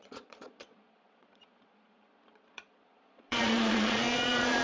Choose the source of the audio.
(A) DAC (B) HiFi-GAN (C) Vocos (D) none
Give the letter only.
C